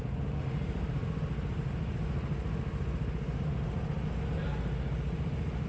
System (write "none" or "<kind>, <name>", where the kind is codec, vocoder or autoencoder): none